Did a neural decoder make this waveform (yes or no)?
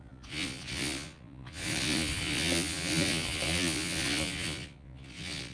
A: yes